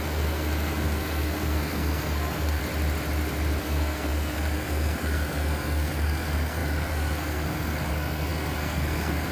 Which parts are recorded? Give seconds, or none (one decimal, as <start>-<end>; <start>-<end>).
2.6-3.6